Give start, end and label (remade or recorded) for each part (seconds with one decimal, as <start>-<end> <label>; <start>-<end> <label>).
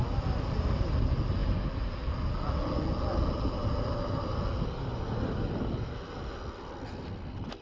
0.0-7.6 recorded